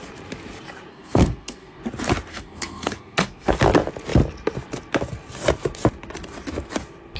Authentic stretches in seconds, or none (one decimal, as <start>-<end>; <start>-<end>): 0.0-0.9; 1.8-2.3; 3.5-7.2